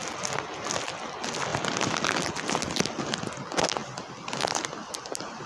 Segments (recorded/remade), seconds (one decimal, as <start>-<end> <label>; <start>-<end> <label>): 0.0-5.5 recorded